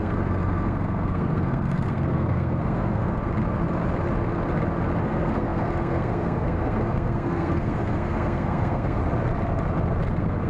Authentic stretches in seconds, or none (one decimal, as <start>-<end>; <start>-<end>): 3.3-5.0; 9.0-10.1